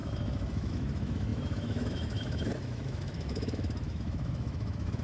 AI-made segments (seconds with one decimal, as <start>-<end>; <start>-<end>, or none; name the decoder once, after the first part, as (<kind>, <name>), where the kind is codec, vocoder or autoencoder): 0.0-5.0 (autoencoder, DAC-VAE)